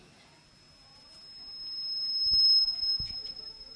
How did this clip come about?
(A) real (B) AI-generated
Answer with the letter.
A